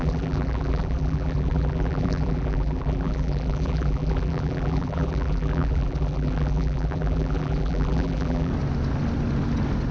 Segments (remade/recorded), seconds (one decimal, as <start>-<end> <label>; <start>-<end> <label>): 0.0-8.5 remade; 8.5-9.9 recorded